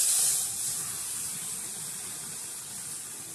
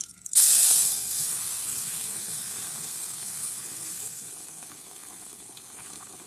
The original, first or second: first